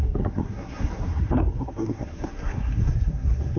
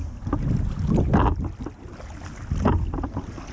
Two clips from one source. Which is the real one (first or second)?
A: second